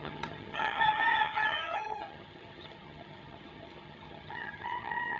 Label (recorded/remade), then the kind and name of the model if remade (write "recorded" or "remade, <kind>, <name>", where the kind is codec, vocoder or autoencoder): remade, vocoder, HiFi-GAN